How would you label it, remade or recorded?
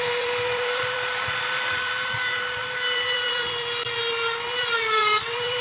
remade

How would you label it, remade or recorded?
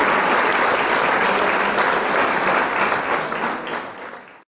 recorded